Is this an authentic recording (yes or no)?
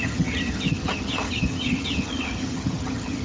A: no